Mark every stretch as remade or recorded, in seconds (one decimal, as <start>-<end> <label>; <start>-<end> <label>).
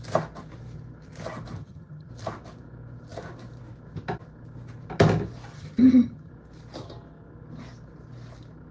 0.0-1.6 recorded; 1.6-2.1 remade; 2.1-5.5 recorded; 5.5-6.3 remade; 6.3-8.7 recorded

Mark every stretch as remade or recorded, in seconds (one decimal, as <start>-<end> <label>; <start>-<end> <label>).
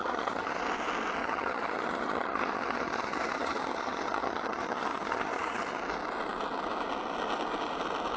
0.0-0.6 remade; 0.6-1.2 recorded; 1.2-5.8 remade; 5.8-8.2 recorded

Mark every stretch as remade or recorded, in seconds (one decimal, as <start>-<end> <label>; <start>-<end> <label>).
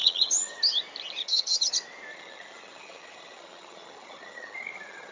0.0-0.6 remade; 0.6-1.2 recorded; 1.2-1.7 remade; 1.7-2.1 recorded; 2.1-5.1 remade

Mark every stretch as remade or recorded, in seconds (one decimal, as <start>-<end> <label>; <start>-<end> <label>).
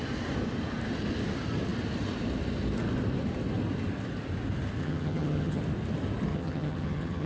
0.0-4.8 recorded; 4.8-5.6 remade; 5.6-6.3 recorded; 6.3-7.3 remade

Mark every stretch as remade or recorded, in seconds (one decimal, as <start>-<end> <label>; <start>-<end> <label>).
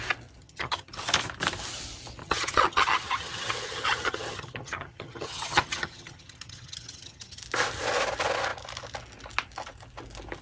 0.0-0.4 recorded; 0.4-0.9 remade; 0.9-2.2 recorded; 2.2-7.4 remade; 7.4-10.4 recorded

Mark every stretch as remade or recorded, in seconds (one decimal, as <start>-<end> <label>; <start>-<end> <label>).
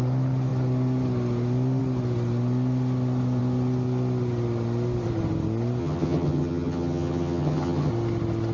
0.0-5.8 recorded; 5.8-7.9 remade; 7.9-8.5 recorded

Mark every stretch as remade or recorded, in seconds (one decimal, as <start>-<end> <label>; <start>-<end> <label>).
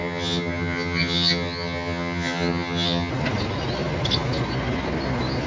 0.0-3.1 remade; 3.1-5.5 recorded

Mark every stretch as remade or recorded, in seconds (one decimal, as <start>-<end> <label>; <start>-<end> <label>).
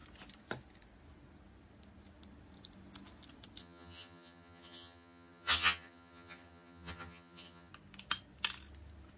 0.0-3.6 recorded; 3.6-7.7 remade; 7.7-9.2 recorded